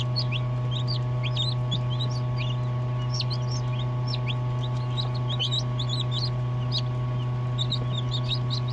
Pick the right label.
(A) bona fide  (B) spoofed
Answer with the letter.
A